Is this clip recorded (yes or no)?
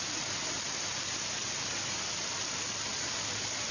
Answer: yes